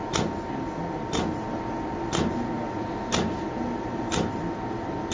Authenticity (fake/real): real